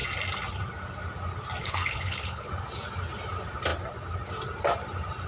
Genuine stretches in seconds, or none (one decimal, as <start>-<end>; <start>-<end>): 0.0-1.6; 2.5-5.3